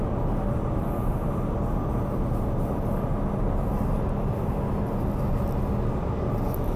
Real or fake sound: real